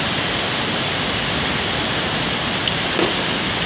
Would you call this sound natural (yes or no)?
yes